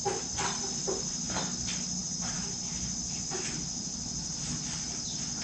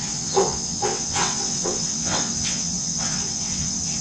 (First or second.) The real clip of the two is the first